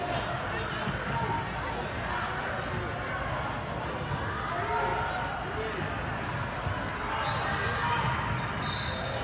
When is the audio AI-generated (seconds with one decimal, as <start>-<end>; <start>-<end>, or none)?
none